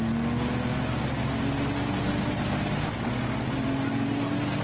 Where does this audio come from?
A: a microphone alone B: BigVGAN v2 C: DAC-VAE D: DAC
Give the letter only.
A